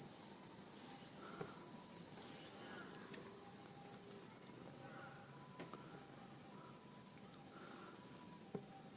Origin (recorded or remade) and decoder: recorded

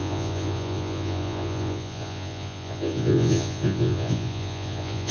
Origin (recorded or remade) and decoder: remade, vocoder, Vocos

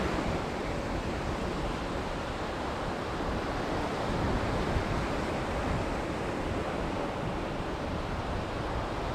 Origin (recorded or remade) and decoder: remade, vocoder, BigVGAN v2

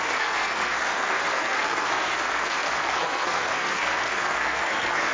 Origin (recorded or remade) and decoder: remade, codec, SNAC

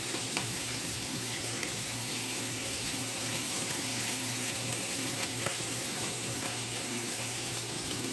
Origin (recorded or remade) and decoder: remade, codec, SNAC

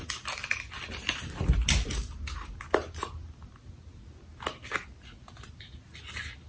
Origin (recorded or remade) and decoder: recorded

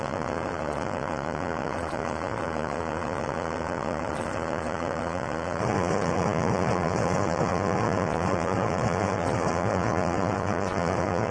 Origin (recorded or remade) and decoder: remade, vocoder, Vocos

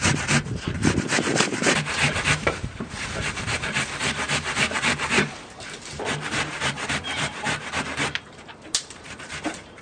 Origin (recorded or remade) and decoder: remade, vocoder, BigVGAN v2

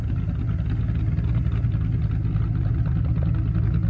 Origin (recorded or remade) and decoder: recorded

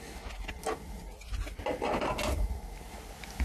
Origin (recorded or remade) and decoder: recorded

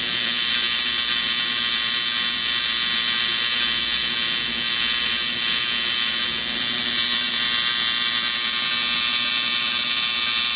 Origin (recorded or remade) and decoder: recorded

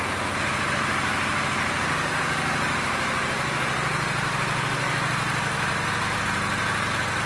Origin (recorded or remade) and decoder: recorded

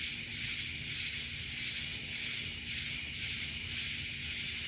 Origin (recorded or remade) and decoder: recorded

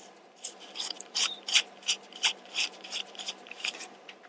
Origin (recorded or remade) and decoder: remade, vocoder, BigVGAN v2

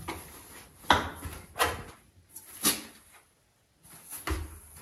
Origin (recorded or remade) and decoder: recorded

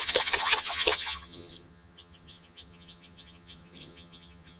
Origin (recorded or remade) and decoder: remade, vocoder, HiFi-GAN